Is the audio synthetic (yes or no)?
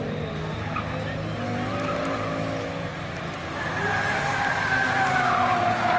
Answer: no